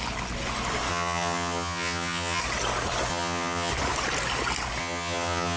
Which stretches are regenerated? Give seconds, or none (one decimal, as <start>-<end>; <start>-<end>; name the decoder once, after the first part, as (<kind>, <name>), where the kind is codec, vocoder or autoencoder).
0.9-2.4 (vocoder, HiFi-GAN); 3.1-3.7; 4.8-5.6